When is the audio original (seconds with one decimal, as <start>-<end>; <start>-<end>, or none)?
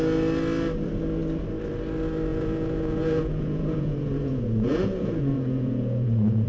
0.0-2.3